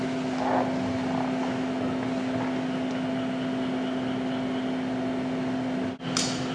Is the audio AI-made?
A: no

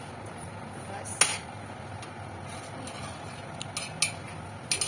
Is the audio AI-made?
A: no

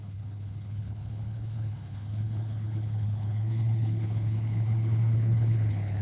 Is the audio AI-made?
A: yes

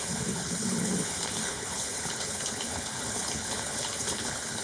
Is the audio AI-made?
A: yes